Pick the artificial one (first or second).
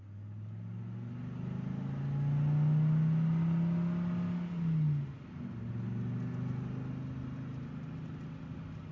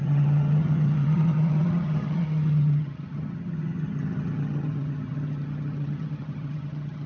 second